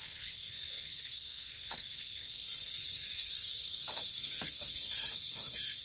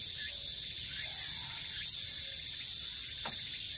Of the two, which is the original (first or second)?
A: second